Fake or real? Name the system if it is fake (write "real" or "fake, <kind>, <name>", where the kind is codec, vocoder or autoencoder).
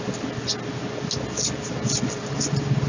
real